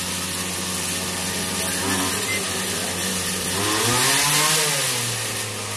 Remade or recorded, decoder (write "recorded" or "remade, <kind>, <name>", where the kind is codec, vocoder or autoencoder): recorded